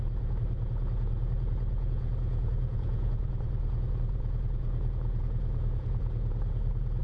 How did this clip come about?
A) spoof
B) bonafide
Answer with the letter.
A